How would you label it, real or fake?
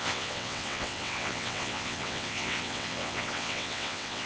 fake